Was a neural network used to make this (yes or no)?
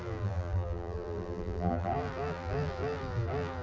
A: yes